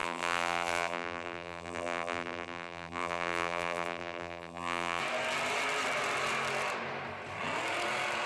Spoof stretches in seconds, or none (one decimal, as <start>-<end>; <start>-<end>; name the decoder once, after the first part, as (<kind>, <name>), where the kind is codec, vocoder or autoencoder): 0.0-5.0 (vocoder, BigVGAN v2)